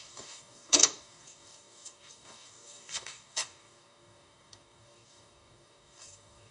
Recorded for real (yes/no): no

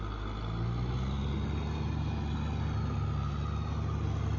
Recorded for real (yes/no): yes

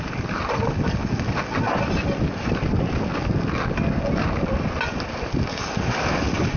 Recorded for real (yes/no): yes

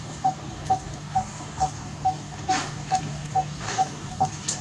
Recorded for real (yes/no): no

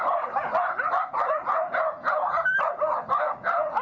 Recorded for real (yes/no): yes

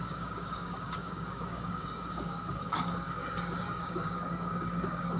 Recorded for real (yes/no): no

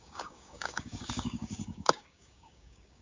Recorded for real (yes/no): no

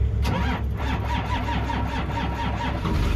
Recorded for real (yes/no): yes